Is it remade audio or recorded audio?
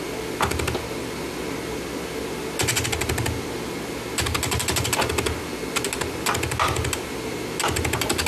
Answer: recorded